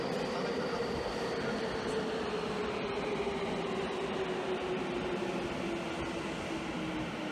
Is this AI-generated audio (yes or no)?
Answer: no